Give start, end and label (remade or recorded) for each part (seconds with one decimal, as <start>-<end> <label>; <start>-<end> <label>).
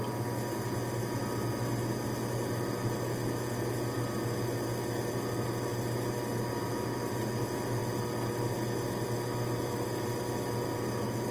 0.0-11.3 recorded